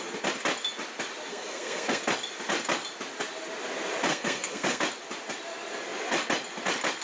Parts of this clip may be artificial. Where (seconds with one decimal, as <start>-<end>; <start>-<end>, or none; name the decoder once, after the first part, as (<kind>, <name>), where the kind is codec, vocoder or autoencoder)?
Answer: 1.3-2.0 (codec, SNAC); 4.1-4.8